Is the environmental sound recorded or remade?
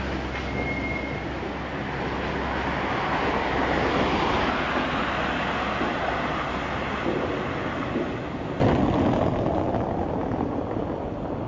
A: recorded